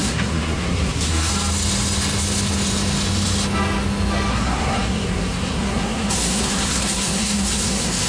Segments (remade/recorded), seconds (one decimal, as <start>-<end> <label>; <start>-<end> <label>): 0.0-1.3 remade; 1.3-4.3 recorded; 4.3-8.1 remade